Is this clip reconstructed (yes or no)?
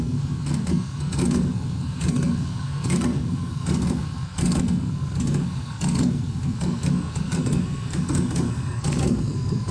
yes